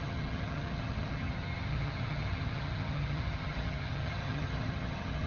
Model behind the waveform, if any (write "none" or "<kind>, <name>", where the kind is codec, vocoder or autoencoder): vocoder, HiFi-GAN